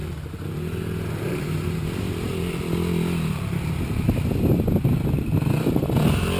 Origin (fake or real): real